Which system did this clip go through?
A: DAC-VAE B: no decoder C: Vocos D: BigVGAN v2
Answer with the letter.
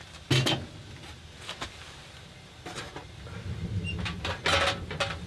B